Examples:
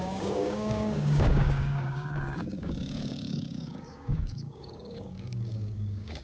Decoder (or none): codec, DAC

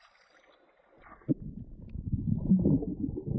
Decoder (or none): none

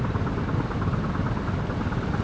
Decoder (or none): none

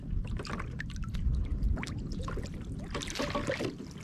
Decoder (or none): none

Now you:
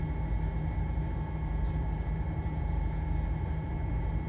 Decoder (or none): none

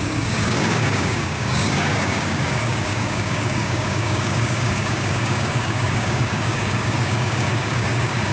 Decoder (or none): codec, DAC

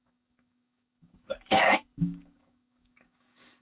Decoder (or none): codec, DAC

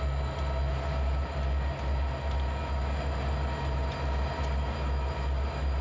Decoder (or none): none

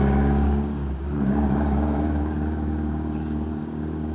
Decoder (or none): codec, DAC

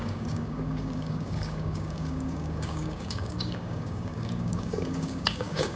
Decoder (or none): codec, DAC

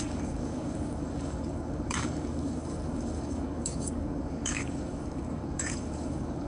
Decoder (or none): codec, DAC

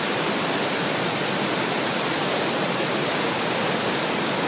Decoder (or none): none